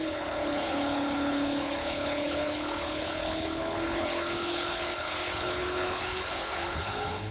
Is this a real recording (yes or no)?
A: no